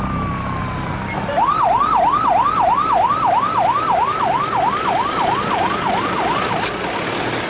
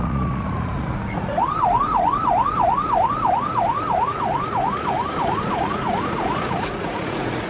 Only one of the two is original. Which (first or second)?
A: first